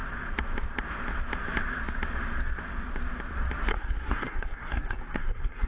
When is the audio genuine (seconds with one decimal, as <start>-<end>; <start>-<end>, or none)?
0.0-3.7